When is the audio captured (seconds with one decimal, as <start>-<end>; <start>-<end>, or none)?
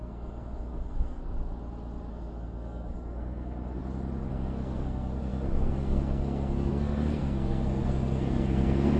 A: 1.3-2.1; 3.8-4.3